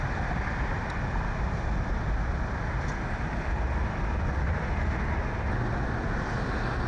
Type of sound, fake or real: real